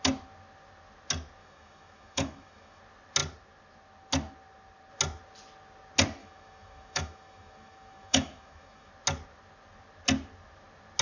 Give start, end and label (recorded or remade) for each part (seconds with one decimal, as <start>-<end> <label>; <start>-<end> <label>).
0.0-1.4 recorded; 1.4-2.8 remade; 2.8-6.2 recorded; 6.2-8.9 remade; 8.9-11.0 recorded